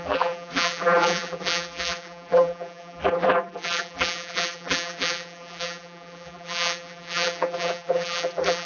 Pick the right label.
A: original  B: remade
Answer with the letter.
B